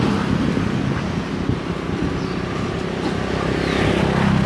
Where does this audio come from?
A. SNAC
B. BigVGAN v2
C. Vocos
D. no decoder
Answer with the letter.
D